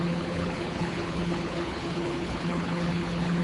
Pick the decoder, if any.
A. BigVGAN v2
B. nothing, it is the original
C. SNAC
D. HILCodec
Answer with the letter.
D